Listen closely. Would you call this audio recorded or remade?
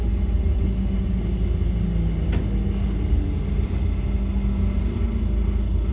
recorded